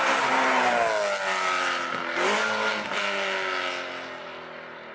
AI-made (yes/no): no